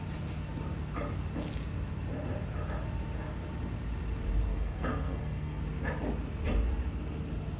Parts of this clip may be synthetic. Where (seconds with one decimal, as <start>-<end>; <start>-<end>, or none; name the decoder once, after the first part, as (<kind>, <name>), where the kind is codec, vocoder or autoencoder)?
4.5-5.6 (codec, SNAC)